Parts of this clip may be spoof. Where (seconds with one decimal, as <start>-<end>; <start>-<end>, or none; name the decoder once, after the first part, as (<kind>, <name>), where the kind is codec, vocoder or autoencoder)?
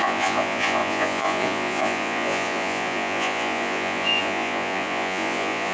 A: 0.0-5.7 (vocoder, Vocos)